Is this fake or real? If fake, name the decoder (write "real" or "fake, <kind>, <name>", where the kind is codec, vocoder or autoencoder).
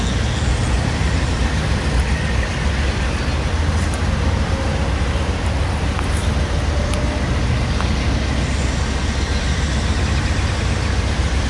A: real